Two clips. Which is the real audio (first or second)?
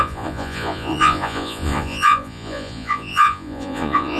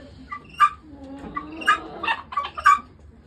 second